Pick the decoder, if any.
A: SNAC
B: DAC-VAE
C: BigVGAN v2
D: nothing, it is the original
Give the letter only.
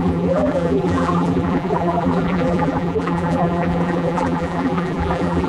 C